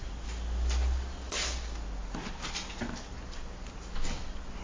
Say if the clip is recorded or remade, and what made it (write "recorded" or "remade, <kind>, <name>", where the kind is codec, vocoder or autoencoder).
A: recorded